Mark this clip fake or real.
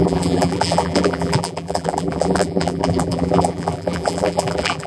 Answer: fake